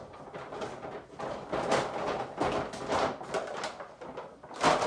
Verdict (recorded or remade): recorded